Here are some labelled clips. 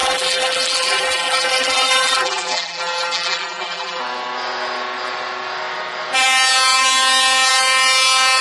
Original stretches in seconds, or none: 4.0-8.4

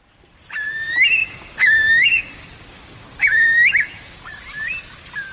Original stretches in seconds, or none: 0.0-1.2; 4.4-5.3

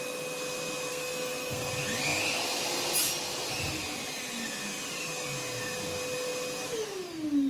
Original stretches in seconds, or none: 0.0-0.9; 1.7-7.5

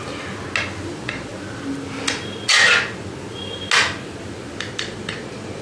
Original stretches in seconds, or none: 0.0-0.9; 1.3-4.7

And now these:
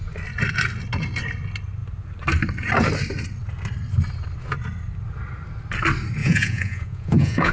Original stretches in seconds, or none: 0.0-6.2

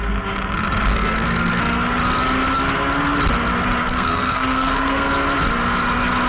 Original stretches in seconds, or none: 0.0-0.9; 1.6-3.8; 5.1-6.3

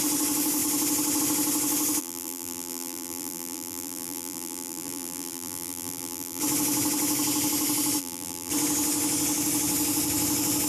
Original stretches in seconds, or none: 0.0-2.0; 6.4-8.0; 8.5-10.7